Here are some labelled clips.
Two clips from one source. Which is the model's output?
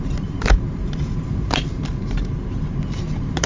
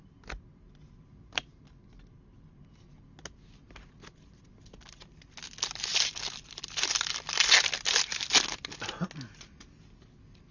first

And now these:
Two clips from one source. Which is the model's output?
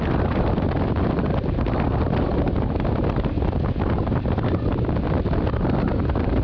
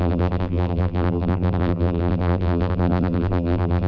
second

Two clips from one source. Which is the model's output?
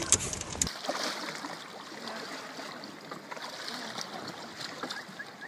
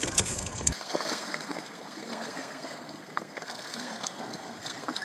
second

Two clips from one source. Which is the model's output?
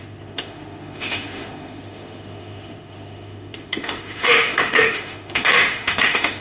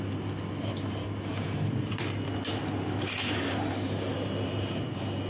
first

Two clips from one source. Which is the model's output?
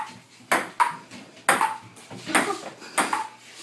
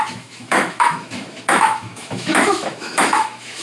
second